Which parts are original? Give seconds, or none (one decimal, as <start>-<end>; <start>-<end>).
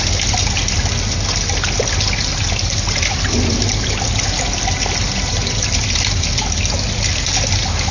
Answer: 0.0-7.9